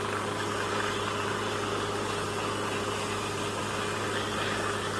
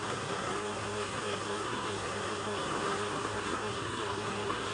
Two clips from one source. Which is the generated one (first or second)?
second